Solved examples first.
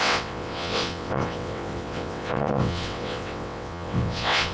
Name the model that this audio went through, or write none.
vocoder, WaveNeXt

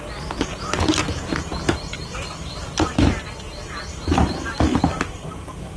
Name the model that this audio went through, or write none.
none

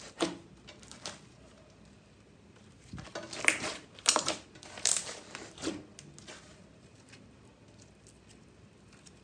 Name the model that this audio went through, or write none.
none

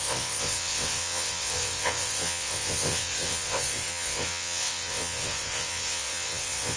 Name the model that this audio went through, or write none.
vocoder, WaveNeXt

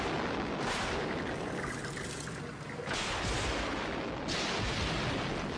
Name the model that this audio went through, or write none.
none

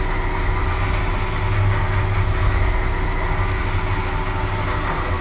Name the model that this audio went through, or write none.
none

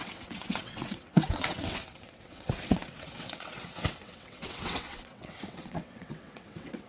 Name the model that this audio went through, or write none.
vocoder, WaveNeXt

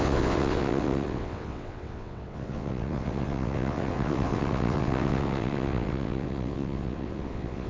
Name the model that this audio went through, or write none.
vocoder, WaveNeXt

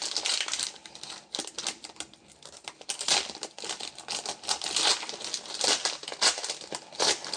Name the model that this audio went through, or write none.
none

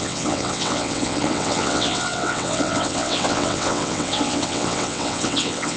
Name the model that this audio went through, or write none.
vocoder, WaveNeXt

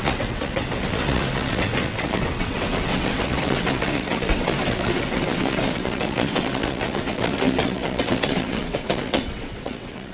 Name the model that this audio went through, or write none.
vocoder, WaveNeXt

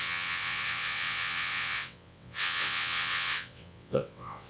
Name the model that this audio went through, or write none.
vocoder, WaveNeXt